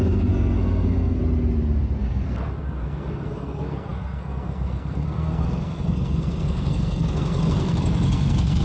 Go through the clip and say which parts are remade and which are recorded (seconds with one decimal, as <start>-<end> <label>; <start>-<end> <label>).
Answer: 0.0-1.2 remade; 1.2-2.0 recorded; 2.0-8.6 remade